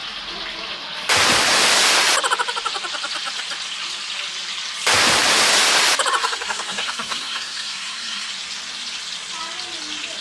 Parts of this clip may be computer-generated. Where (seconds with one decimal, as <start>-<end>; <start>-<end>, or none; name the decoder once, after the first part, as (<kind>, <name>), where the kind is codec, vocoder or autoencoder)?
6.2-8.3 (codec, SNAC)